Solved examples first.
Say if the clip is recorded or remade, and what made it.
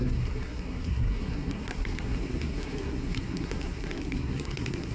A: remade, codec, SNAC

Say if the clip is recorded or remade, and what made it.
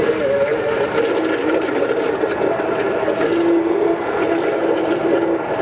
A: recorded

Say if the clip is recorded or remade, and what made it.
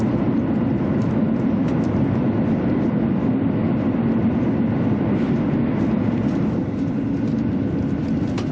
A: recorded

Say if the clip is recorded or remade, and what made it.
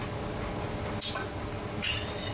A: recorded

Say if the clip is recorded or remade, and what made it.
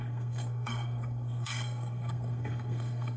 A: remade, codec, SNAC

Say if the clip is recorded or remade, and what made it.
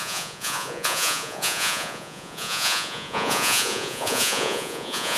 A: remade, vocoder, Vocos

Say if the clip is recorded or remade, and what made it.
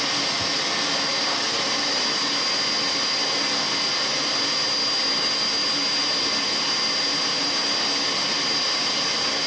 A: recorded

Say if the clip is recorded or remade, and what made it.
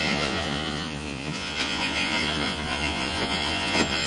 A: remade, vocoder, Vocos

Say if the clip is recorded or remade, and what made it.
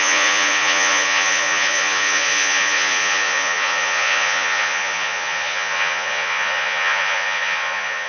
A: remade, vocoder, Vocos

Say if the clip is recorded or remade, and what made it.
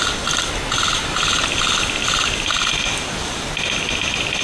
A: recorded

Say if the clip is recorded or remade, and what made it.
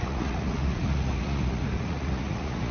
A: remade, vocoder, Vocos